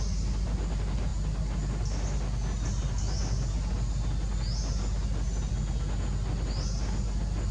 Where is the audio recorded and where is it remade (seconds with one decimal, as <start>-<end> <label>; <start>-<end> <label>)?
0.0-7.5 recorded